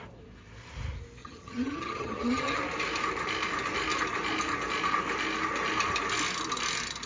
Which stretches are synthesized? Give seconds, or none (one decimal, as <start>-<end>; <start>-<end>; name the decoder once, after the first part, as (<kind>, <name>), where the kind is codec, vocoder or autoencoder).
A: 1.2-2.6 (vocoder, HiFi-GAN)